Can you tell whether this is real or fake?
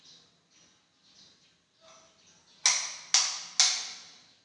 real